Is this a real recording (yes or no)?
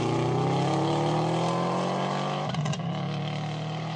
yes